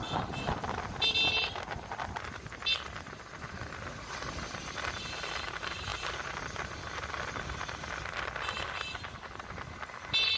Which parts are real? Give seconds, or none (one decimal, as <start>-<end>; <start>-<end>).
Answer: 0.0-10.4